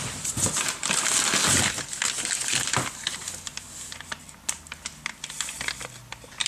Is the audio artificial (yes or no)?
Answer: no